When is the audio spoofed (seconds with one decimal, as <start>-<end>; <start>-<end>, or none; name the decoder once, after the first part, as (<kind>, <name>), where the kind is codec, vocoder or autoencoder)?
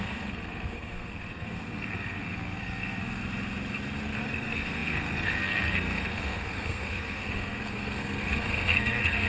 0.0-3.2 (codec, SNAC); 4.0-9.3